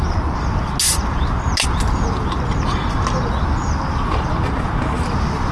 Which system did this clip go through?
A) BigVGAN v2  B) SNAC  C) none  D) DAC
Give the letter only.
C